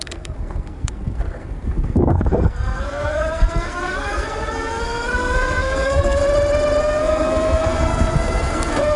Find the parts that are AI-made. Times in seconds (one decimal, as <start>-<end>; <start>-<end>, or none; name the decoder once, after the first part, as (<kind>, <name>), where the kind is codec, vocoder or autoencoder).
0.0-6.2 (codec, SNAC); 6.8-9.0